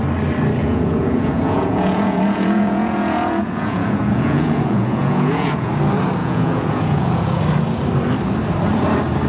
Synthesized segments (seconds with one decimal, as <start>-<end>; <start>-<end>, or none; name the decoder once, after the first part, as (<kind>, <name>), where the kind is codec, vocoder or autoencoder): 0.6-5.7 (vocoder, Vocos); 6.2-7.4

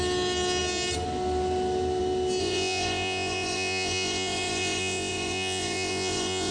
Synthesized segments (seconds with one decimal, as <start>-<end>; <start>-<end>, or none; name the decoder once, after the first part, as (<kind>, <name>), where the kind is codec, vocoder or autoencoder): 2.4-6.5 (vocoder, Vocos)

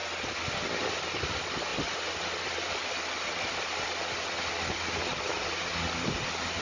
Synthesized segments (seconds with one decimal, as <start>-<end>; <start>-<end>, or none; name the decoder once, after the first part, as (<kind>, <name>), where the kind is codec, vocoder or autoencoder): none

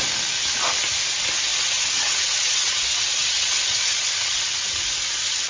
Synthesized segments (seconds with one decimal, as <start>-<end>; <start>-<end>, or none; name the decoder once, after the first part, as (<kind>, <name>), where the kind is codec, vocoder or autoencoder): 1.5-4.8 (vocoder, WaveNeXt)